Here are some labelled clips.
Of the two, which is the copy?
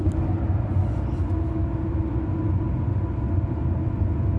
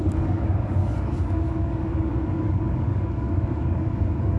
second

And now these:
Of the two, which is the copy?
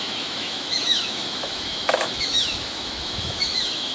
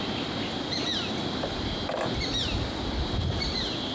first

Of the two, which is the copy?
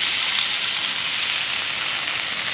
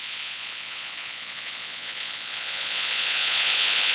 second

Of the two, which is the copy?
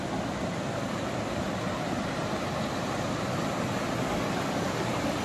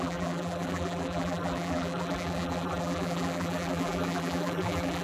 second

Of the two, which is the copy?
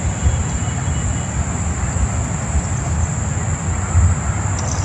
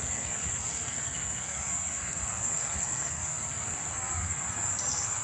second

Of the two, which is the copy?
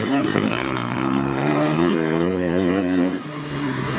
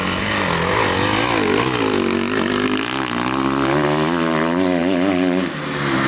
first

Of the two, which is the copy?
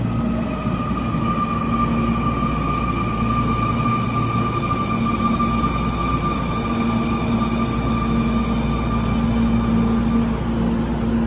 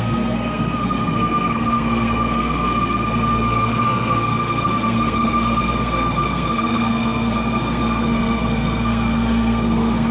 second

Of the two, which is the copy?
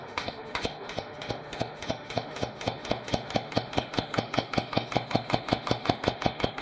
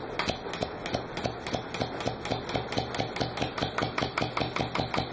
first